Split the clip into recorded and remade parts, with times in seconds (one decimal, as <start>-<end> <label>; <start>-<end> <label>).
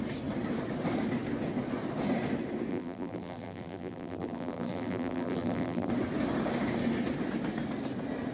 0.0-2.7 recorded; 2.7-5.9 remade; 5.9-8.3 recorded